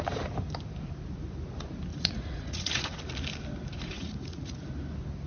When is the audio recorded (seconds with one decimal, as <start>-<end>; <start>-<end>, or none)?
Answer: 0.0-1.9; 3.0-3.7; 4.6-5.3